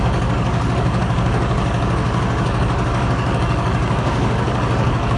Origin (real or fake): fake